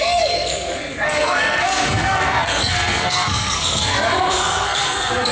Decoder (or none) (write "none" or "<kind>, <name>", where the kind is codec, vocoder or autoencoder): codec, SNAC